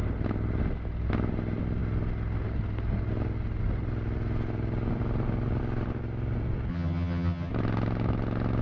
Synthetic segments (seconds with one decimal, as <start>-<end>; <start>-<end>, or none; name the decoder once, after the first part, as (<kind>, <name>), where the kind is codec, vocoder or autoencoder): 6.7-7.5 (vocoder, HiFi-GAN)